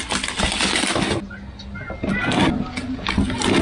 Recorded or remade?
recorded